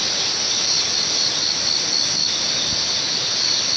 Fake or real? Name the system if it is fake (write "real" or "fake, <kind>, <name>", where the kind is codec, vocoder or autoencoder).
real